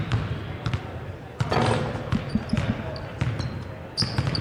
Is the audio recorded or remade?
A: recorded